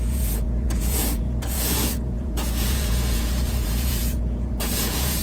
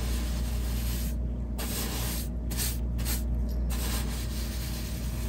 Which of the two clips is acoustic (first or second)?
second